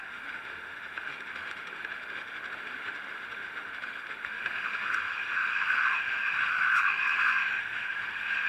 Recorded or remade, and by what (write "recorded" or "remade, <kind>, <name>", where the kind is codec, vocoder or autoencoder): remade, autoencoder, DAC-VAE